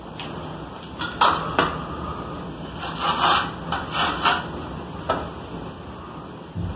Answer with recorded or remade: recorded